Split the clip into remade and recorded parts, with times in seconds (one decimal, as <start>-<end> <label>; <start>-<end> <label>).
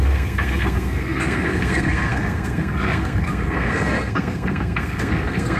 0.0-5.6 remade